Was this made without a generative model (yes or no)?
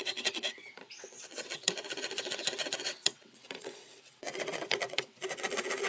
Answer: no